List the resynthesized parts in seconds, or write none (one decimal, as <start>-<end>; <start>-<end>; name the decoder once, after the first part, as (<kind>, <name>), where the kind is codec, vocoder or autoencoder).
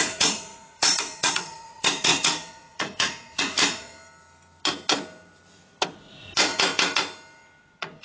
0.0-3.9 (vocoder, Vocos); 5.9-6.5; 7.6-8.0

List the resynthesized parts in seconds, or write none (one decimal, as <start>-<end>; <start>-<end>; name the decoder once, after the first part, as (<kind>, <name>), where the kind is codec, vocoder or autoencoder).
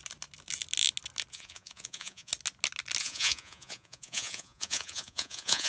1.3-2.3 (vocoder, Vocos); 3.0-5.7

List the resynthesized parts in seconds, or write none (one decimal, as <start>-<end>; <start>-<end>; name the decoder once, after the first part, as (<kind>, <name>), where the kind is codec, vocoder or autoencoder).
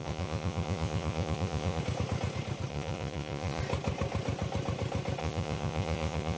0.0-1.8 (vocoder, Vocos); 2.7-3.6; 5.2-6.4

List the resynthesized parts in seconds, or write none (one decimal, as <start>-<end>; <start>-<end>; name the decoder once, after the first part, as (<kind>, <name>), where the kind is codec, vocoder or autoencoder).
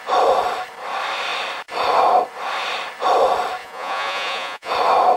3.6-4.7 (vocoder, Vocos)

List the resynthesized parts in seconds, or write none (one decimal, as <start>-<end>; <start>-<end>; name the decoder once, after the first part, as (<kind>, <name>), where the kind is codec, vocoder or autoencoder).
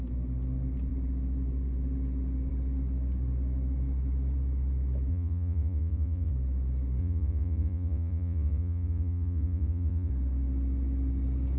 5.1-6.3 (vocoder, Vocos); 7.0-10.1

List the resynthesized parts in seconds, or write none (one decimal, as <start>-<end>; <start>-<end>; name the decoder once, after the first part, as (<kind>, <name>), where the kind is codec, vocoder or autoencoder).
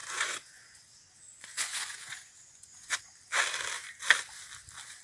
0.0-3.0 (vocoder, Vocos)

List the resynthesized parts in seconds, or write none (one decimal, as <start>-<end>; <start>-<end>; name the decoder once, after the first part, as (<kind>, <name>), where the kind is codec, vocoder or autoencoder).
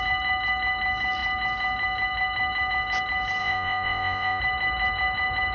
3.4-4.4 (vocoder, Vocos)